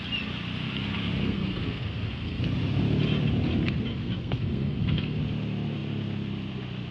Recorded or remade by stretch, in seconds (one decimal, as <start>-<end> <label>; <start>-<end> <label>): 0.0-1.2 recorded; 1.2-2.4 remade; 2.4-3.9 recorded; 3.9-5.2 remade; 5.2-6.9 recorded

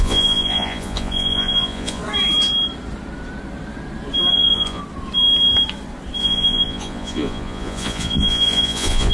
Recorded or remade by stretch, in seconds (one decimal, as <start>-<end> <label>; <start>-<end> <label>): 0.0-2.0 remade; 2.0-4.3 recorded; 4.3-4.8 remade; 4.8-6.2 recorded; 6.2-9.1 remade

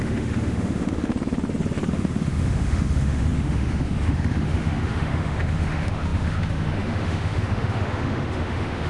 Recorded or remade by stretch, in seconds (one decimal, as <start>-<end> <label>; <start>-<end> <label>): 0.0-1.1 remade; 1.1-1.9 recorded; 1.9-8.9 remade